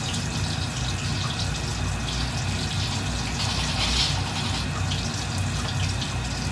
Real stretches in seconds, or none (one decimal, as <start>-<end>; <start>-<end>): 0.0-6.5